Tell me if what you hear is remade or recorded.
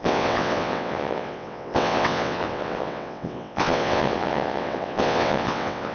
remade